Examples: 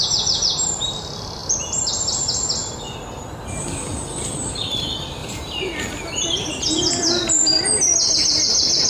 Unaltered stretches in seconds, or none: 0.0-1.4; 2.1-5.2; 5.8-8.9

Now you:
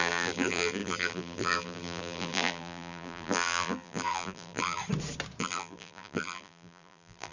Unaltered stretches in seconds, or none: 4.8-5.4

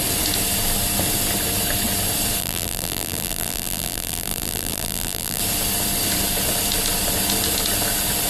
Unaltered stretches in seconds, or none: 0.0-2.4; 5.4-8.3